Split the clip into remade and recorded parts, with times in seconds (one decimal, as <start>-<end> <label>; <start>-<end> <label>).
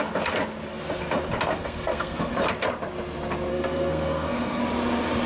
0.0-1.6 recorded; 1.6-2.3 remade; 2.3-3.5 recorded; 3.5-4.6 remade; 4.6-5.3 recorded